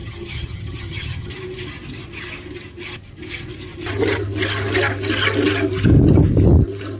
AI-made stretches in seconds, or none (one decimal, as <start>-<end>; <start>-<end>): 0.0-1.3